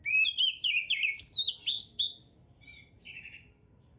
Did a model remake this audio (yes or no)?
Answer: no